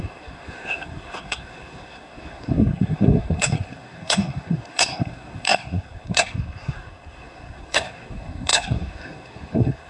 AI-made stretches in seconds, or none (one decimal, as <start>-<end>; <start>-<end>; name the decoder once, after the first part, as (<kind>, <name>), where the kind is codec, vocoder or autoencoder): 0.0-9.9 (codec, SNAC)